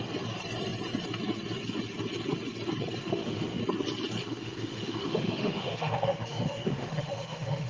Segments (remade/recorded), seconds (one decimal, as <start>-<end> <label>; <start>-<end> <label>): 0.0-3.0 recorded; 3.0-3.6 remade; 3.6-4.2 recorded; 4.2-7.7 remade